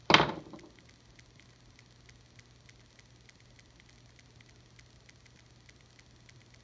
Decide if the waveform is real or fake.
real